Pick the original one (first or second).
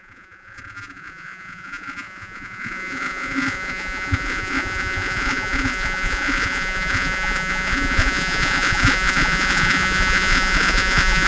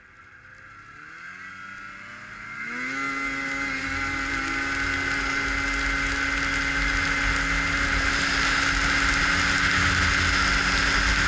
second